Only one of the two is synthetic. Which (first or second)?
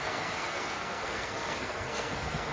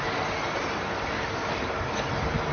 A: first